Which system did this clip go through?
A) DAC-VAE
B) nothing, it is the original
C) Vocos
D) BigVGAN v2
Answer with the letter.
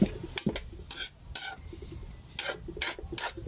B